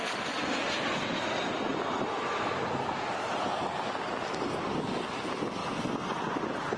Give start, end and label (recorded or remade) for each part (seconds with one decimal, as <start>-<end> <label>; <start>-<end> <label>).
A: 0.0-6.8 recorded

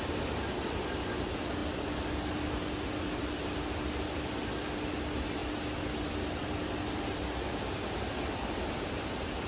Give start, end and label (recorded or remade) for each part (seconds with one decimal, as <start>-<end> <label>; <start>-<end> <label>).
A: 0.0-9.5 recorded

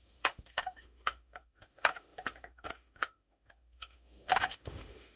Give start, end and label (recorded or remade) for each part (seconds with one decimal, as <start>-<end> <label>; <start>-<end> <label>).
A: 0.0-5.2 remade

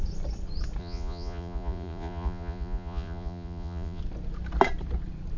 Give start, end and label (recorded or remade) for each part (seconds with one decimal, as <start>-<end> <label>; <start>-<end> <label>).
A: 0.0-0.8 recorded; 0.8-4.0 remade; 4.0-5.4 recorded

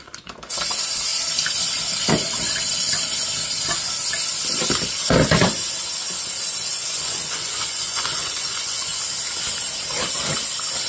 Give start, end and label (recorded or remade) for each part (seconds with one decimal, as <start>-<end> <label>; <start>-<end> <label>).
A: 0.0-6.7 recorded; 6.7-9.0 remade; 9.0-10.9 recorded

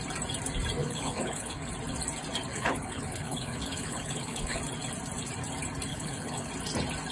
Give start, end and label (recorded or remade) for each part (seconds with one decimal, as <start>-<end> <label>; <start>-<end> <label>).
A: 0.0-0.8 recorded; 0.8-1.7 remade; 1.7-2.5 recorded; 2.5-4.6 remade; 4.6-5.9 recorded; 5.9-6.5 remade; 6.5-7.1 recorded

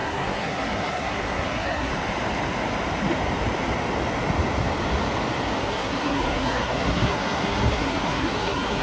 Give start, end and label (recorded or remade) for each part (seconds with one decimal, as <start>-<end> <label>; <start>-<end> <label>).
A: 0.0-1.9 remade; 1.9-5.6 recorded; 5.6-8.8 remade